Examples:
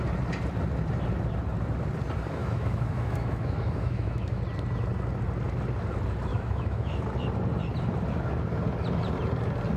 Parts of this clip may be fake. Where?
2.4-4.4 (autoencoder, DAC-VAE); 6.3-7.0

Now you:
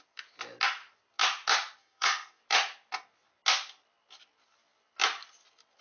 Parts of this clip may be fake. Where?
1.8-2.4 (codec, SNAC)